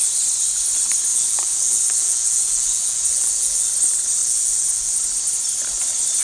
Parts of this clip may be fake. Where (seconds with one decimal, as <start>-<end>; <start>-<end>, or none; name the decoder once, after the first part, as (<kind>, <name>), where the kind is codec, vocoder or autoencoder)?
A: 1.1-3.7 (vocoder, Vocos); 4.2-4.9